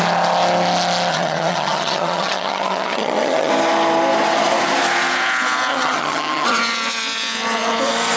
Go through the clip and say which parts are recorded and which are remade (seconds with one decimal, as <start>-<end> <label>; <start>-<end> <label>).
0.0-1.1 recorded; 1.1-3.5 remade; 3.5-5.7 recorded; 5.7-6.6 remade; 6.6-8.2 recorded